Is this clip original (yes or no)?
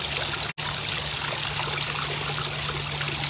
yes